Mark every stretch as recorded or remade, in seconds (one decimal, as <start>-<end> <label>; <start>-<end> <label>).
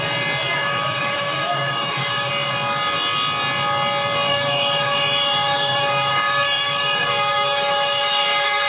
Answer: 0.0-0.5 recorded; 0.5-2.3 remade; 2.3-4.3 recorded; 4.3-8.7 remade